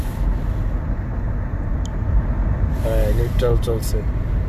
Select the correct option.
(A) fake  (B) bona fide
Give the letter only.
B